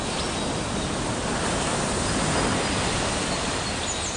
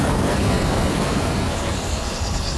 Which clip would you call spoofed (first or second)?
second